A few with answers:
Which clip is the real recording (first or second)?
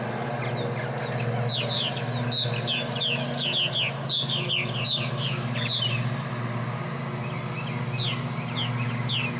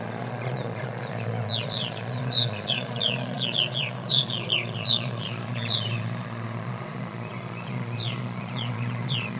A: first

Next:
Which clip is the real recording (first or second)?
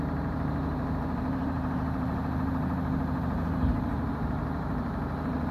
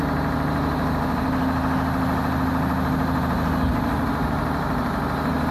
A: second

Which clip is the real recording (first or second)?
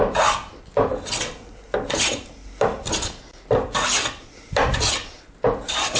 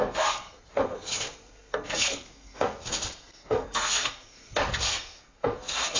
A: first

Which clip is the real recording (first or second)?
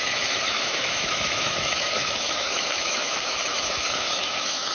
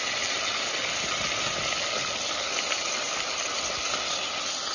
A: second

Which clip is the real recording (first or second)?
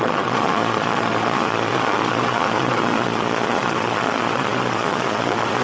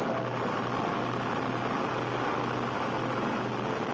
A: second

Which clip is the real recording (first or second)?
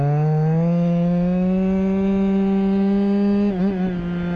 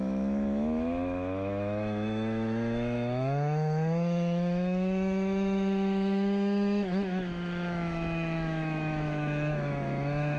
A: first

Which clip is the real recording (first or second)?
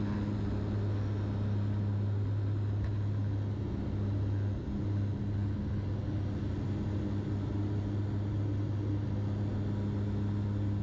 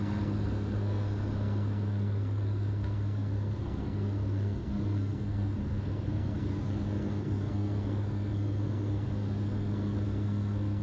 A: first